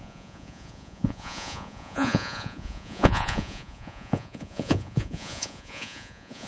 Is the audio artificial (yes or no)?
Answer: yes